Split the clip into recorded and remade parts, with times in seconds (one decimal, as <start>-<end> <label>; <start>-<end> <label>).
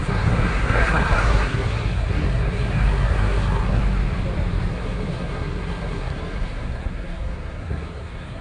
0.0-3.8 remade; 3.8-4.7 recorded; 4.7-8.4 remade